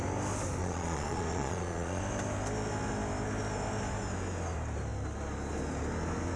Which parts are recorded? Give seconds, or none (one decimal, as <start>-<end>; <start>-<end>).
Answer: 0.0-0.6; 2.0-6.4

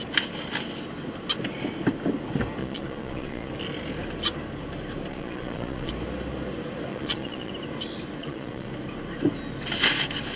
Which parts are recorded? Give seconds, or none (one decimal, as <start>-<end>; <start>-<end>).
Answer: 0.0-2.6; 3.5-5.1; 5.9-6.9; 7.5-8.2; 8.7-10.4

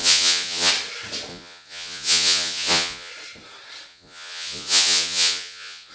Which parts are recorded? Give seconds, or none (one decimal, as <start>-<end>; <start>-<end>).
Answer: 0.7-1.3; 3.1-3.9

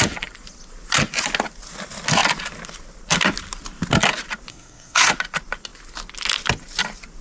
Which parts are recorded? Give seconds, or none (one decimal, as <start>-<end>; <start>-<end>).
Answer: 0.0-4.5; 5.1-7.2

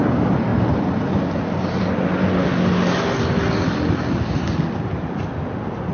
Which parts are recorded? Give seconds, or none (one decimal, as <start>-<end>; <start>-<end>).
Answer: 0.0-5.9

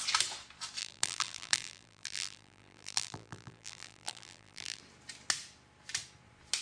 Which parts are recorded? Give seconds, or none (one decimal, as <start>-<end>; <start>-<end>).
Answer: 0.0-0.8; 4.8-6.6